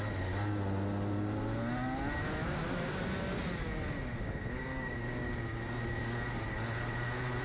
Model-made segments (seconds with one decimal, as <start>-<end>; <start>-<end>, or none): 2.4-3.0; 4.1-5.3